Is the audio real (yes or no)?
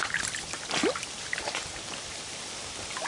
yes